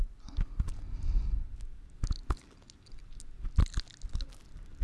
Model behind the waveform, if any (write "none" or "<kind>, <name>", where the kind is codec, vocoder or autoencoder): none